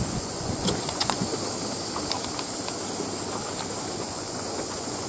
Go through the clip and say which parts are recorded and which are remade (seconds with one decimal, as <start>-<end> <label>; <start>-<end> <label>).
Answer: 0.0-1.3 remade; 1.3-4.0 recorded; 4.0-5.1 remade